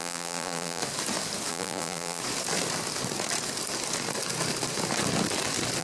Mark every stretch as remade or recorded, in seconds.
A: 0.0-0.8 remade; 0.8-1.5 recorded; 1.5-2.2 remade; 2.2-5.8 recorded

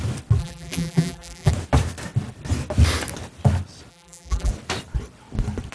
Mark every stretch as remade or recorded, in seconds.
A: 0.0-0.4 recorded; 0.4-1.5 remade; 1.5-3.9 recorded; 3.9-4.5 remade; 4.5-5.7 recorded

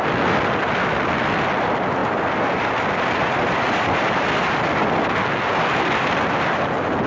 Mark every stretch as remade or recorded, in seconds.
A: 0.0-7.1 recorded

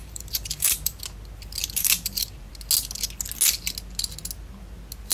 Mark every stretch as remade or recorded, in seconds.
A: 0.0-1.0 remade; 1.0-1.6 recorded; 1.6-2.5 remade; 2.5-5.1 recorded

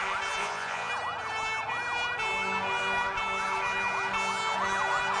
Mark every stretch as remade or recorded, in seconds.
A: 0.0-0.4 recorded; 0.4-0.9 remade; 0.9-5.2 recorded